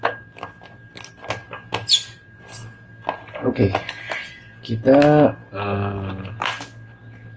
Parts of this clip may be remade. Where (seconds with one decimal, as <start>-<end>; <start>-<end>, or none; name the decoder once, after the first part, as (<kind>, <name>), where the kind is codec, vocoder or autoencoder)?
none